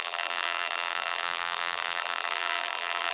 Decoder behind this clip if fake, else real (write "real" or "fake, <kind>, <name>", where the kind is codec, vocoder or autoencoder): fake, vocoder, BigVGAN v2